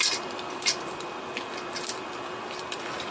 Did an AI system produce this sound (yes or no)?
no